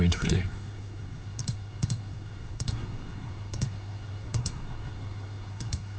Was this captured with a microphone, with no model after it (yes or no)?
no